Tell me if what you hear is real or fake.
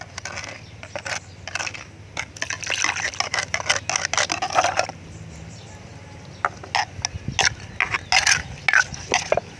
real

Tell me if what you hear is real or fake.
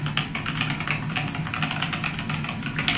real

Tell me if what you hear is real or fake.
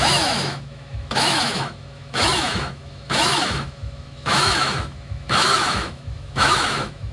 fake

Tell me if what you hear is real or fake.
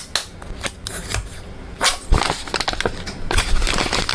real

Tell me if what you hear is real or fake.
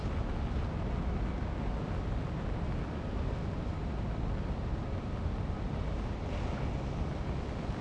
real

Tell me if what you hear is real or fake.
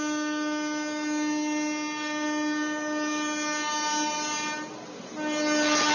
real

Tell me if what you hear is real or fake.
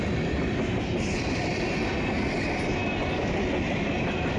real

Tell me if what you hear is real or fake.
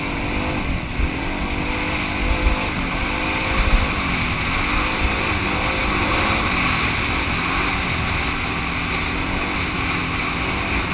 real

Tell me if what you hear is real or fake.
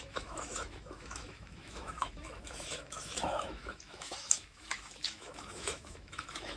fake